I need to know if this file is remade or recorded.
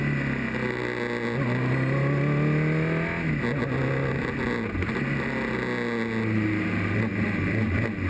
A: recorded